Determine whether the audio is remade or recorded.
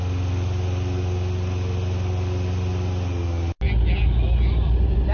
recorded